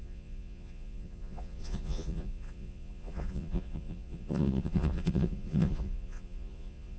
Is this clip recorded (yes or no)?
no